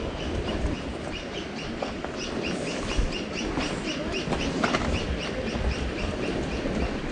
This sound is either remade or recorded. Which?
recorded